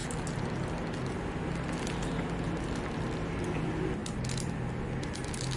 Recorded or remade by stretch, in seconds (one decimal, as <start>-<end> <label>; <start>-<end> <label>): 0.0-5.6 recorded